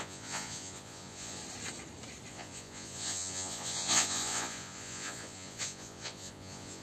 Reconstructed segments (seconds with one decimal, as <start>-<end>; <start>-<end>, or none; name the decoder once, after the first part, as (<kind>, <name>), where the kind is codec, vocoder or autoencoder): 0.0-1.4 (vocoder, Vocos); 2.3-6.8